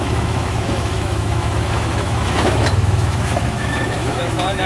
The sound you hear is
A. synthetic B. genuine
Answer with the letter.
A